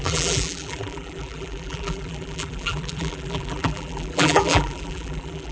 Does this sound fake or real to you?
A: fake